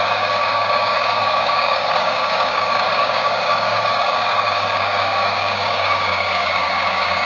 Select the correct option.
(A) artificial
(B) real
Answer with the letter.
A